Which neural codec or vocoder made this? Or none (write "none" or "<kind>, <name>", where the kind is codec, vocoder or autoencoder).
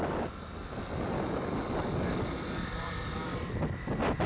none